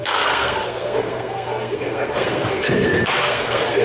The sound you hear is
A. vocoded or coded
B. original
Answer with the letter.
A